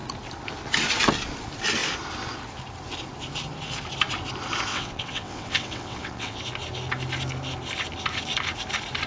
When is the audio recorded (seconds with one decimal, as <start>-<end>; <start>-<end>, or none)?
0.0-4.7; 6.4-9.1